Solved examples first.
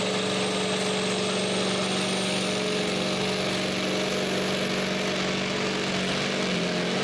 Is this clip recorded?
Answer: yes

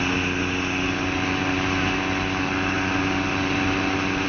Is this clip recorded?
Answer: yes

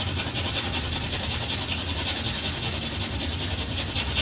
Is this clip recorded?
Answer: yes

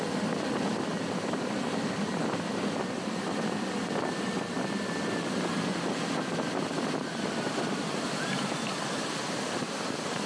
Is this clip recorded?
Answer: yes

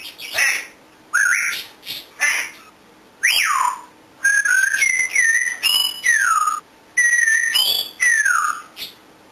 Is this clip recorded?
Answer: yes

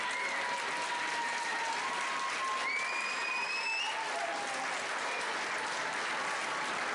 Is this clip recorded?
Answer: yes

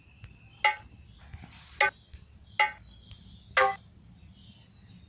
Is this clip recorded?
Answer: yes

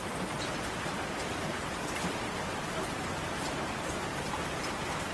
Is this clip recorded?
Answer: no